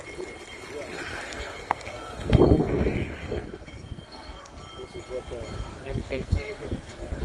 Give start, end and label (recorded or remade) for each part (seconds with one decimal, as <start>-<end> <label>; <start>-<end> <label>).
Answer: 0.0-1.1 recorded; 1.1-4.6 remade; 4.6-5.7 recorded; 5.7-7.2 remade